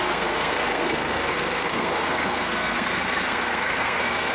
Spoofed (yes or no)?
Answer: yes